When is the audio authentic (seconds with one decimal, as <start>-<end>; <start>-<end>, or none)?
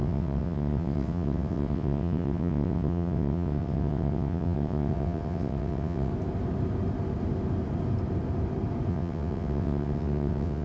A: 6.1-8.9